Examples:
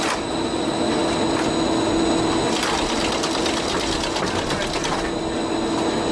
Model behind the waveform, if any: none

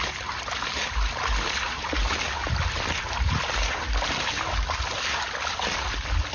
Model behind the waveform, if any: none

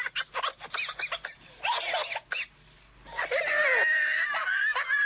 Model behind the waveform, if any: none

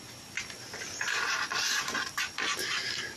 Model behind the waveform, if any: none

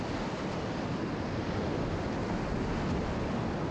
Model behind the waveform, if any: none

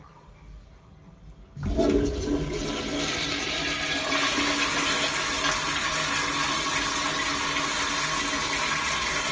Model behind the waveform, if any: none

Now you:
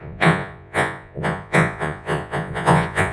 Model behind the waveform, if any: vocoder, Vocos